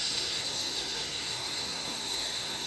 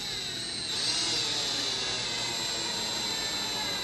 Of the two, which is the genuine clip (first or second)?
second